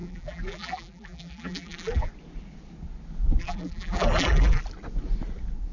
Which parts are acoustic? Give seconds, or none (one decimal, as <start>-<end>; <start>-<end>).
2.1-3.4; 4.6-5.7

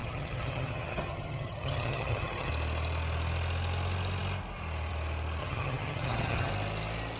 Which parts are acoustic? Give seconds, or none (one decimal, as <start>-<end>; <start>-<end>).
2.5-5.4; 6.5-7.2

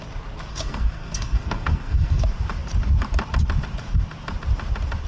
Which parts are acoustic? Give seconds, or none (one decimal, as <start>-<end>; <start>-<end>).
0.0-0.5; 2.2-5.1

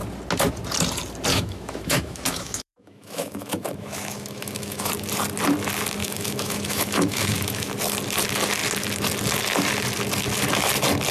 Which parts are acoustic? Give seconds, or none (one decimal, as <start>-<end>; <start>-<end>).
0.0-1.3; 4.9-6.0; 7.7-11.1